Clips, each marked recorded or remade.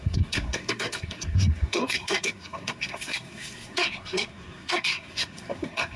remade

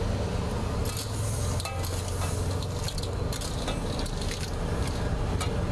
recorded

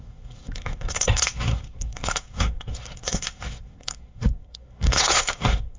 remade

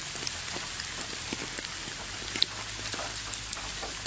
recorded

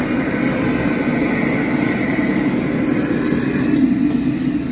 recorded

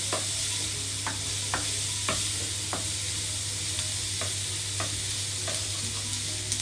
recorded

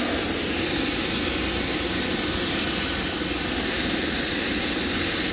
recorded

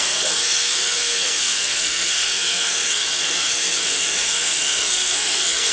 remade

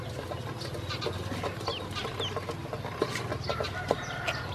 recorded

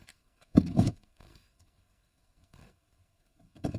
remade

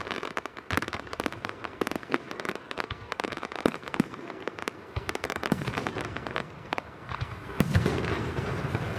remade